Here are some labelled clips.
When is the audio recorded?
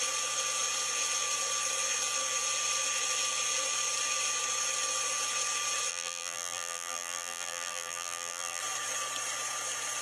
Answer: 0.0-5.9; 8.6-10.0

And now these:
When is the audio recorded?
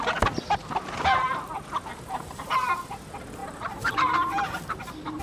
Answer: 0.0-1.9; 2.5-3.4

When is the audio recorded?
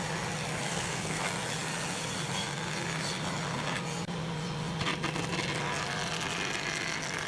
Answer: 0.0-0.7; 1.2-7.3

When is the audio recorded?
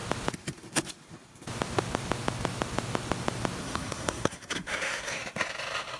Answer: 0.0-3.6; 5.2-6.0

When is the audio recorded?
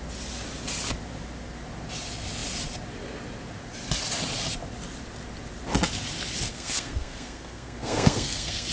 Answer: 0.0-6.5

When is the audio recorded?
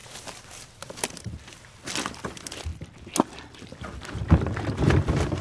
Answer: 2.7-3.4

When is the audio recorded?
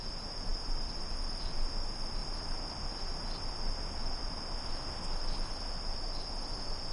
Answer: 0.0-6.9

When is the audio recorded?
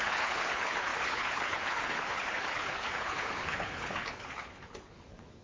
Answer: none